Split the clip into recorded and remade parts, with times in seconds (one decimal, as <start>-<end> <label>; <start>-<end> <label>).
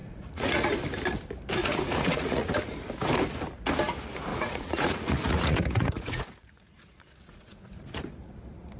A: 0.0-0.7 remade; 0.7-1.6 recorded; 1.6-2.5 remade; 2.5-4.3 recorded; 4.3-8.1 remade; 8.1-8.8 recorded